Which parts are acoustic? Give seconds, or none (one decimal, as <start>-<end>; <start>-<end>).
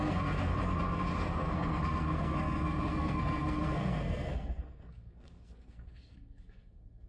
0.5-1.2